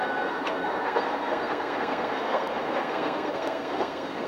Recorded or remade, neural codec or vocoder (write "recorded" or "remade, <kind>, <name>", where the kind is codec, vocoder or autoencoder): remade, codec, SNAC